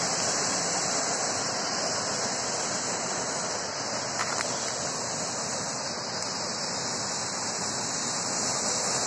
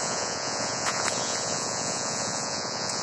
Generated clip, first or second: second